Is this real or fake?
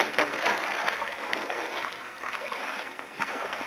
fake